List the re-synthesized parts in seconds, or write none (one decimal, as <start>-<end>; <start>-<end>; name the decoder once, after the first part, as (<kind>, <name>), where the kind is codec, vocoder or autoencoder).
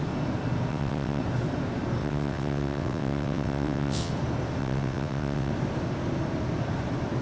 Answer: 0.7-1.2 (vocoder, WaveNeXt); 2.0-4.1; 4.6-5.5